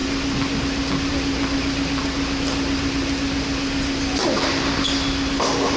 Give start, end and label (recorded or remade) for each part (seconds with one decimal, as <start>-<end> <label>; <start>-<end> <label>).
0.0-5.8 recorded